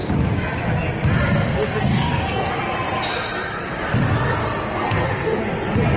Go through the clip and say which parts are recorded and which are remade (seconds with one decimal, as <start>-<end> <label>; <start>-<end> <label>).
0.0-1.9 recorded; 1.9-2.5 remade; 2.5-4.8 recorded; 4.8-5.4 remade; 5.4-6.0 recorded